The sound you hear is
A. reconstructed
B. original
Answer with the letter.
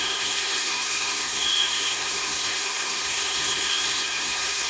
A